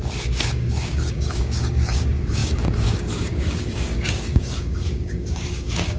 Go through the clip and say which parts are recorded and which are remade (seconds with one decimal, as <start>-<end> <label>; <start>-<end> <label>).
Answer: 0.0-6.0 remade